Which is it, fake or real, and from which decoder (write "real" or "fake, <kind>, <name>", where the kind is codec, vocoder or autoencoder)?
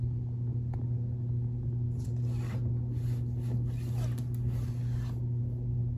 real